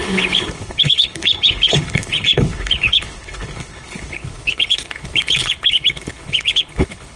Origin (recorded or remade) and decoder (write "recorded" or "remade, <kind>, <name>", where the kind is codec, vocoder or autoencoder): remade, codec, HILCodec